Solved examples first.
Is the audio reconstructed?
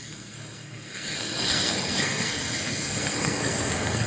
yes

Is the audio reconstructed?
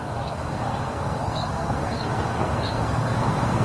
yes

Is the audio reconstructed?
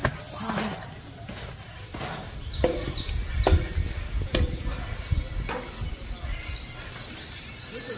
no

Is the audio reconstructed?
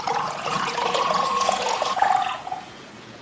yes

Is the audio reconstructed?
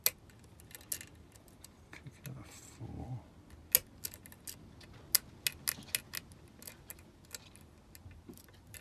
no